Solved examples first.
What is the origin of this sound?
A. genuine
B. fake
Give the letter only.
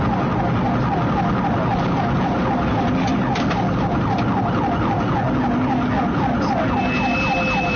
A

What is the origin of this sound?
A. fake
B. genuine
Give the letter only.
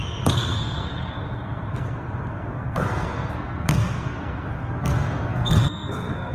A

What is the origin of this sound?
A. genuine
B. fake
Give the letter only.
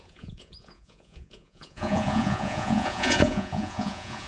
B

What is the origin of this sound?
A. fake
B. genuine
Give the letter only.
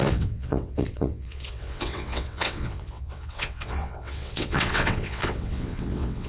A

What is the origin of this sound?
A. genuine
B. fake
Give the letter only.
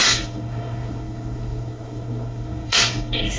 B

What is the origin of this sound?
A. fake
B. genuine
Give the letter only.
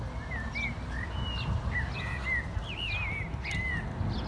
B